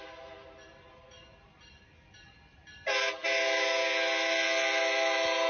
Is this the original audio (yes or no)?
yes